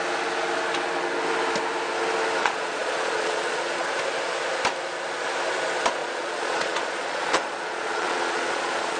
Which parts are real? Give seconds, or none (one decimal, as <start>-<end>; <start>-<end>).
0.0-2.4; 3.9-6.0